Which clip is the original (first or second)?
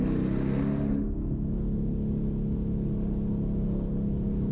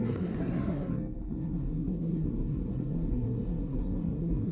first